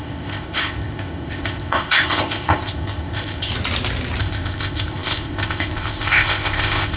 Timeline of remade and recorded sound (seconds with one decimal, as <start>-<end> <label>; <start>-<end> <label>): 0.0-3.5 remade; 3.5-4.2 recorded; 4.2-7.0 remade

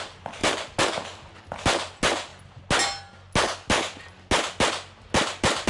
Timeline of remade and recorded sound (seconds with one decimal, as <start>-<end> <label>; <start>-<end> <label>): 0.0-5.7 recorded

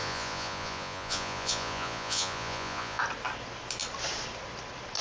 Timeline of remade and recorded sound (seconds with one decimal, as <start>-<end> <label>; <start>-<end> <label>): 0.0-3.0 remade; 3.0-5.0 recorded

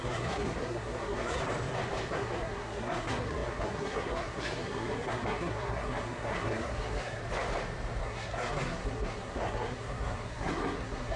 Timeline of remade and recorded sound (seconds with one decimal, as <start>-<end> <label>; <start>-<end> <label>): 0.0-1.4 remade; 1.4-2.1 recorded; 2.1-7.2 remade; 7.2-8.0 recorded; 8.0-11.2 remade

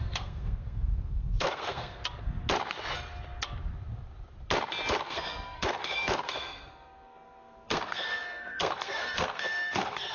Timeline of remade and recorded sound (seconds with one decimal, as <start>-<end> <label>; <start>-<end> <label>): 0.0-2.0 remade; 2.0-4.9 recorded; 4.9-10.1 remade

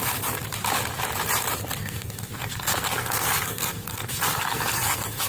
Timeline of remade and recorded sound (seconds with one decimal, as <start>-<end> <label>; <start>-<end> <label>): 0.0-1.8 recorded; 1.8-5.3 remade

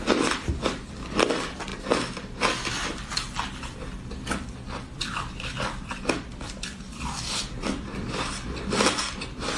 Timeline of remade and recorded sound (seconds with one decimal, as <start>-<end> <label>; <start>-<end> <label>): 0.0-1.7 remade; 1.7-2.7 recorded; 2.7-9.6 remade

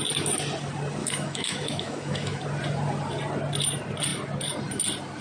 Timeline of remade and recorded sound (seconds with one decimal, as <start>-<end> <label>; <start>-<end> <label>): 0.0-1.0 recorded; 1.0-2.4 remade; 2.4-5.2 recorded